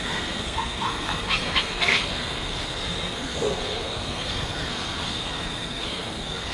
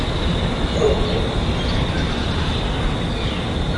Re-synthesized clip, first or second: first